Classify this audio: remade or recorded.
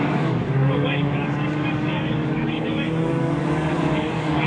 remade